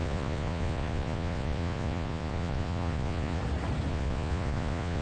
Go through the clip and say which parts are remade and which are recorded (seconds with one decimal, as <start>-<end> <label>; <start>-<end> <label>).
0.0-3.4 remade; 3.4-3.9 recorded; 3.9-5.0 remade